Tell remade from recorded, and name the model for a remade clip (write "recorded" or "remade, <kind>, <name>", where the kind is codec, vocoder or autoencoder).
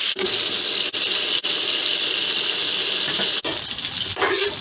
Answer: recorded